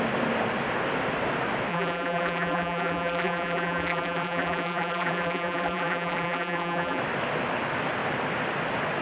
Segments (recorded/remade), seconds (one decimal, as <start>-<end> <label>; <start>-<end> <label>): 0.0-1.7 recorded; 1.7-7.0 remade; 7.0-9.0 recorded